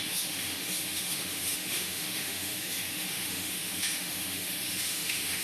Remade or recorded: remade